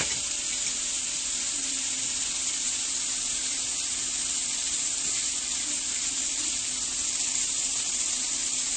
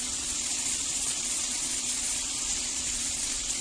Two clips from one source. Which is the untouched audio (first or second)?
first